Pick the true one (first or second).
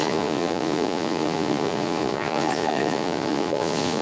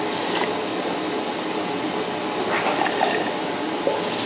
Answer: second